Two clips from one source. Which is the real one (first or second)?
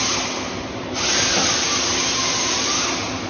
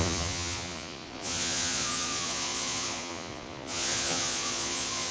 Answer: first